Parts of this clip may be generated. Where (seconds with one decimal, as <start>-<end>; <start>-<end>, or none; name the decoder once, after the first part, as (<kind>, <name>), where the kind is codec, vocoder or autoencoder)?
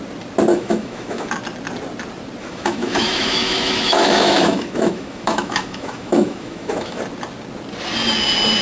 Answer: 0.5-1.3 (autoencoder, DAC-VAE); 2.4-7.0